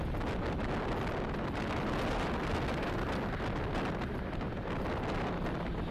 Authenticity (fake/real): real